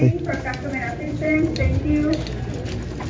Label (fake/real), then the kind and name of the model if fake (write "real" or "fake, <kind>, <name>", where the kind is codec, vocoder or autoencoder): real